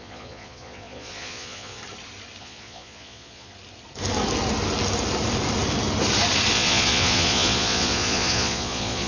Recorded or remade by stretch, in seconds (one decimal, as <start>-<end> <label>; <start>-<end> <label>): 0.0-1.8 remade; 1.8-2.4 recorded; 2.4-3.5 remade; 3.5-6.5 recorded; 6.5-9.1 remade